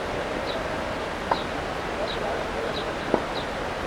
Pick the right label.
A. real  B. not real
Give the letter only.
A